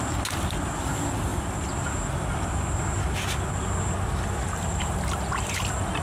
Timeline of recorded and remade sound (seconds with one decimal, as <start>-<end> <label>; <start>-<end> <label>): 0.0-4.4 recorded; 4.4-5.0 remade; 5.0-6.0 recorded